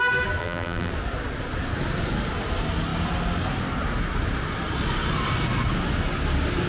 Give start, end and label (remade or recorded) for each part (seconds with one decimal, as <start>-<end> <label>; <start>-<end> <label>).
0.0-0.4 recorded; 0.4-0.9 remade; 0.9-6.7 recorded